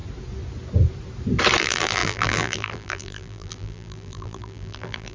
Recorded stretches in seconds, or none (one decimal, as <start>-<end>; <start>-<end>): 0.0-1.6